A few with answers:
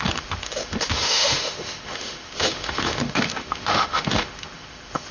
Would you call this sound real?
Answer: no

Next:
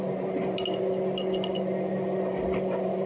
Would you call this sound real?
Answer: yes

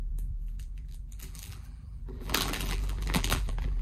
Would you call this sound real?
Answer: no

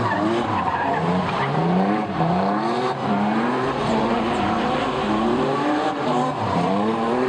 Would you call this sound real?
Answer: no